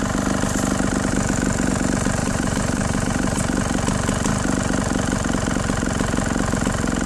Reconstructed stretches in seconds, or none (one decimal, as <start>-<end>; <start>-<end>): 2.2-3.4